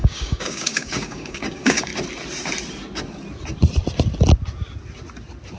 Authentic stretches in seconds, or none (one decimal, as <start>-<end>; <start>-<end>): 1.9-5.6

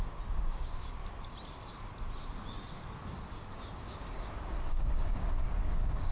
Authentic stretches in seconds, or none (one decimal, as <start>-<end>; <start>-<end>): 1.0-3.3